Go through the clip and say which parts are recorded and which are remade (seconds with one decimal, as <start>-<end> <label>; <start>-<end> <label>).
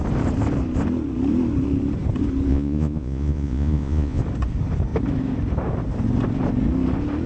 0.0-2.5 recorded; 2.5-4.2 remade; 4.2-7.3 recorded